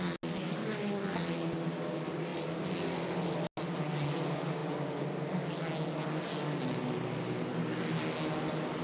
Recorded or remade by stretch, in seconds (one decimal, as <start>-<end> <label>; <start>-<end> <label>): 0.0-8.8 recorded